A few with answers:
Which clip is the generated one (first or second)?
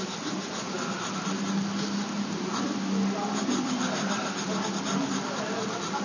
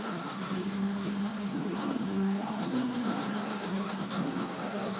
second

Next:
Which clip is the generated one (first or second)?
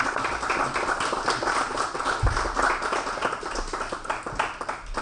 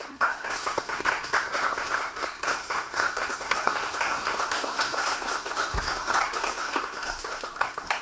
second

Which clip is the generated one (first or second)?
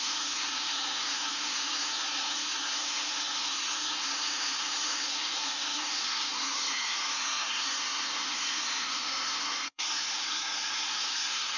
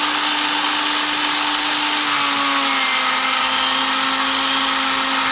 first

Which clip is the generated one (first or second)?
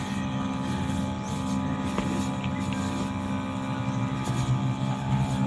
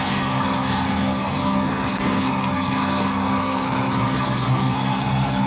second